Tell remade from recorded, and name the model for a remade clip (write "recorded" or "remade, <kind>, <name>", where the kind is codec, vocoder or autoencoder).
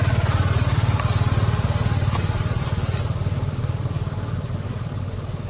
recorded